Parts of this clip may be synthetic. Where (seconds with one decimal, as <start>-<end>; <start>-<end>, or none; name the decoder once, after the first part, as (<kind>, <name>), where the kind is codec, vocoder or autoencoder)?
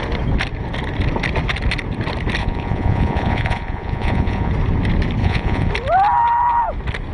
2.4-4.5 (vocoder, Vocos); 5.2-5.7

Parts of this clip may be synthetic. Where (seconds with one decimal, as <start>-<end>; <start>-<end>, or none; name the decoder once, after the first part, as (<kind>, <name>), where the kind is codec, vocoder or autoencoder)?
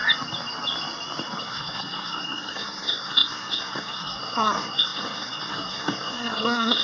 1.4-6.8 (codec, SNAC)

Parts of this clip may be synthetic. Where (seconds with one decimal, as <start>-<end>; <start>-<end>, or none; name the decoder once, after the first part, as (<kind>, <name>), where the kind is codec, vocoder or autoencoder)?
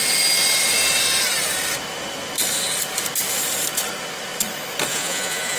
4.9-5.6 (vocoder, Vocos)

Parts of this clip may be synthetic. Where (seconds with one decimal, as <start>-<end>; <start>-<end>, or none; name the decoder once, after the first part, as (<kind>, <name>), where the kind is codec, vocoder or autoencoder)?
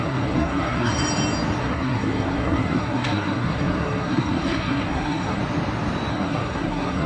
0.0-0.9 (codec, SNAC); 1.6-5.4; 6.1-7.1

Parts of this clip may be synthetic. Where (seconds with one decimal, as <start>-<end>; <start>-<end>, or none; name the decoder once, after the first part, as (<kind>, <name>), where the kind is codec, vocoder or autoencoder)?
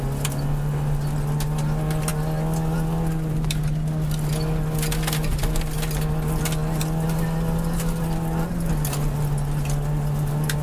none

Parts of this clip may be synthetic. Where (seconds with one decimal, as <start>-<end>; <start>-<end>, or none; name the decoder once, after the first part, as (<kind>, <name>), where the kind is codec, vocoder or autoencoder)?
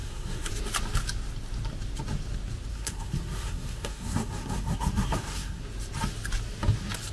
0.0-0.5 (codec, SNAC); 2.7-5.6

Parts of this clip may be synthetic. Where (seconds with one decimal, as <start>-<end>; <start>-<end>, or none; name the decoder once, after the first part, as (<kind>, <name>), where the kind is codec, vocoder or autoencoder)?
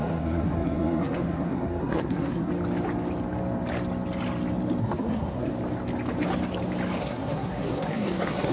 0.0-2.5 (codec, SNAC); 4.8-5.5; 7.0-8.5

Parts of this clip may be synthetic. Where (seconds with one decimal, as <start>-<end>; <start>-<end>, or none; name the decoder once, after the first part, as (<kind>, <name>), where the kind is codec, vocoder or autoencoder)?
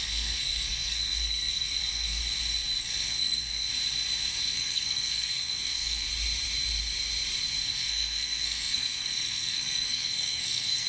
0.0-2.2 (codec, SNAC); 2.8-3.7; 4.4-6.1; 7.6-10.9